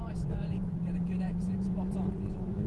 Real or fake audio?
fake